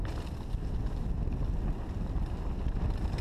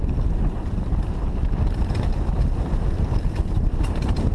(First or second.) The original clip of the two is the first